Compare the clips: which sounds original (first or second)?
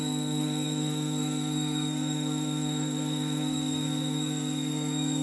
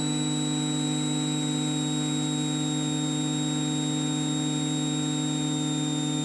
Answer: second